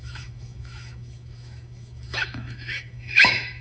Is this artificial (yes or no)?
yes